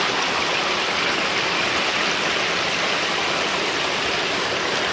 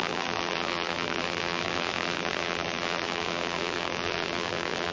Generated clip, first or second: second